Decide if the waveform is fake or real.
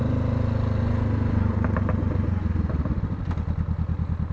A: real